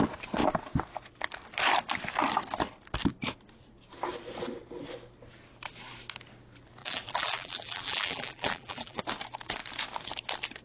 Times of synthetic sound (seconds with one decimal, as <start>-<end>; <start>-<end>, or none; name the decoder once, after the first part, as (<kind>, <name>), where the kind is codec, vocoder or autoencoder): 6.8-9.0 (vocoder, BigVGAN v2)